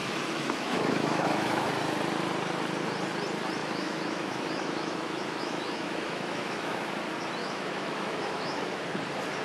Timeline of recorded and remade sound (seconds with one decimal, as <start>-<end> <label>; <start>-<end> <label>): 0.0-1.7 remade; 1.7-3.6 recorded; 3.6-6.9 remade; 6.9-7.4 recorded; 7.4-8.8 remade; 8.8-9.4 recorded